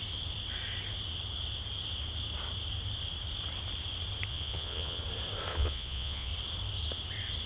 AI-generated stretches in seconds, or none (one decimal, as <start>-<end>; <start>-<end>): 4.3-5.0; 5.5-6.3